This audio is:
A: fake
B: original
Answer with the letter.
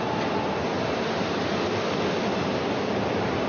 B